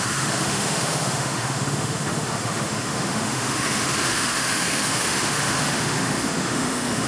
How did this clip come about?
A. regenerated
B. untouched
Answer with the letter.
A